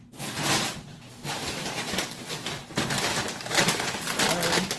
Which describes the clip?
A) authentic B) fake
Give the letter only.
A